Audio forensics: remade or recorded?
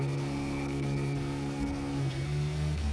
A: remade